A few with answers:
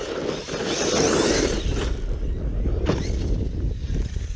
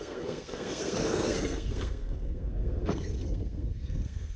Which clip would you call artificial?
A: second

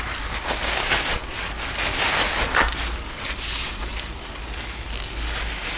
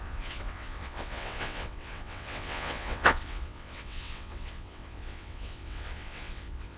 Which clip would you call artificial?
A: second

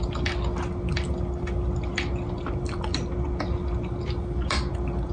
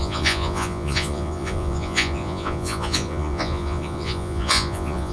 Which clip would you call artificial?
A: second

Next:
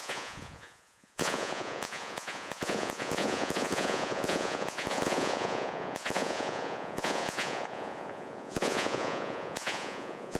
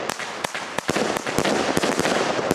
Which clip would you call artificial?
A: first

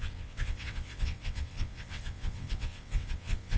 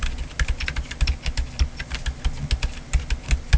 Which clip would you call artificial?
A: first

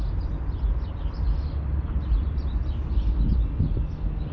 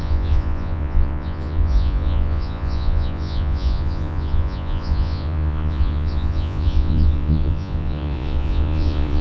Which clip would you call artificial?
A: second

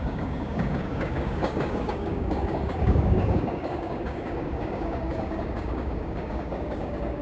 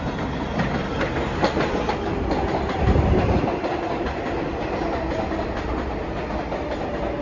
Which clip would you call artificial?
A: first